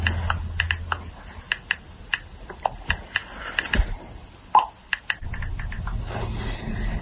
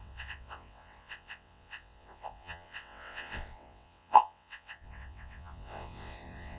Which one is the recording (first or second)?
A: first